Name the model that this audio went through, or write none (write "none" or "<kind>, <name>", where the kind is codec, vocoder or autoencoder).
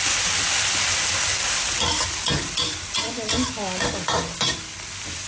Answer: none